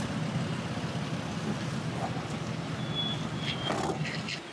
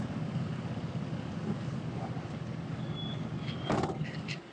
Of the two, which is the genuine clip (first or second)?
first